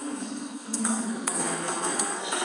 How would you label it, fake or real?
fake